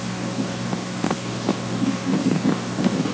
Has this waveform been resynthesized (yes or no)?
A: yes